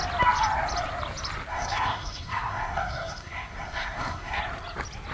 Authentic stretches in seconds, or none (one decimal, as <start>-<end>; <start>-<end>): 0.0-1.5; 4.4-5.1